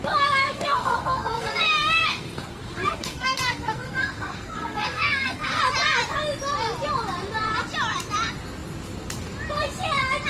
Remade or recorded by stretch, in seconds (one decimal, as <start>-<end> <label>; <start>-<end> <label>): 0.0-0.4 recorded; 0.4-5.6 remade; 5.6-10.3 recorded